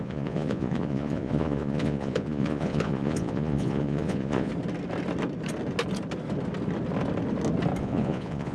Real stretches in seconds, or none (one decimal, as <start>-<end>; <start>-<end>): 4.5-7.8